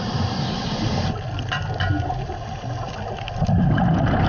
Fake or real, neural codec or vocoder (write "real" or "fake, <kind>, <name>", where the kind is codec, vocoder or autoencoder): real